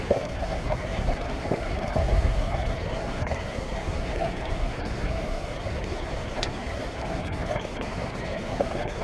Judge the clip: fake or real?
fake